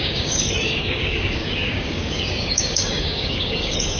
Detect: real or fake fake